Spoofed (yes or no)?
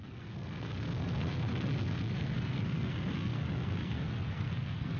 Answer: yes